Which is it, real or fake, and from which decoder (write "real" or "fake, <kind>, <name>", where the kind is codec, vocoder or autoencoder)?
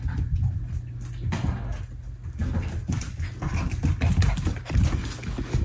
real